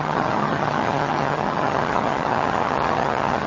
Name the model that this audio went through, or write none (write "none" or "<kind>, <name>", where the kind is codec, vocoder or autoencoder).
vocoder, HiFi-GAN